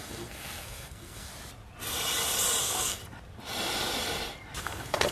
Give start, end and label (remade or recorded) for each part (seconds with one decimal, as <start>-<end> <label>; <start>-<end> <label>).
0.0-1.3 remade; 1.3-2.6 recorded; 2.6-3.0 remade; 3.0-4.6 recorded; 4.6-5.1 remade